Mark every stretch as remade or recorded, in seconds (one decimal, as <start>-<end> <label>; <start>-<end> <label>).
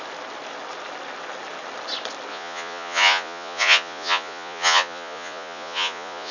0.0-2.3 recorded; 2.3-6.3 remade